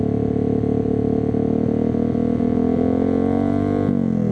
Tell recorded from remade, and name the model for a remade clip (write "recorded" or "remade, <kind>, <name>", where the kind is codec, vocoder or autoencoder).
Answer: recorded